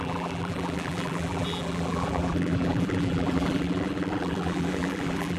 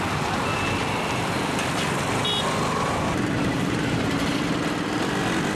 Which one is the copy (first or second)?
first